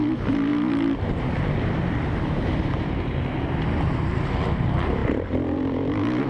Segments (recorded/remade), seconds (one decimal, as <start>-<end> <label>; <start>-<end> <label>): 0.0-6.3 remade